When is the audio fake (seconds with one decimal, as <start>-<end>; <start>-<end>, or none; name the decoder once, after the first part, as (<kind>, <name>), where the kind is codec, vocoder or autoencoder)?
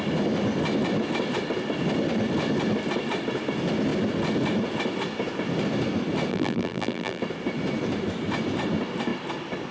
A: 6.3-7.2 (vocoder, BigVGAN v2)